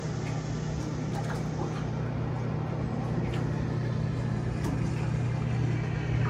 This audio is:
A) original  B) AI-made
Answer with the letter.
A